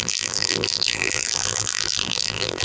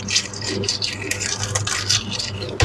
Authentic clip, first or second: second